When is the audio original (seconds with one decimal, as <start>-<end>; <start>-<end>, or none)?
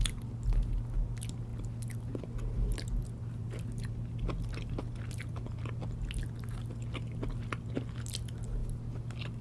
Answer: 0.0-9.4